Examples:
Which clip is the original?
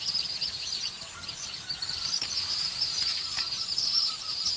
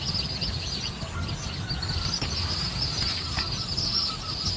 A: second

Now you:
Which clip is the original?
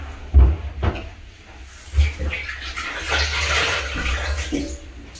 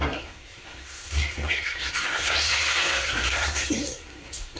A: first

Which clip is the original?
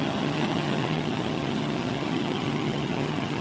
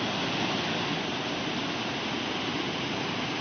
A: second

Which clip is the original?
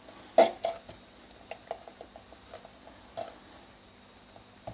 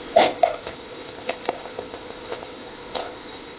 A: first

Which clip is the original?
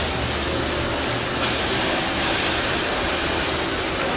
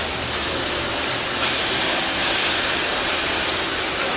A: first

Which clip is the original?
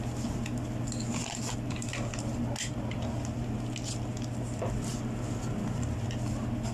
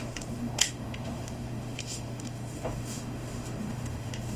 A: first